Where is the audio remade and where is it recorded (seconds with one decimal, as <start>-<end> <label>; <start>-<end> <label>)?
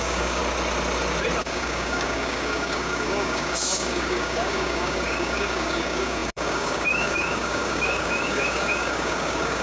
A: 0.0-0.4 remade; 0.4-1.4 recorded; 1.4-9.6 remade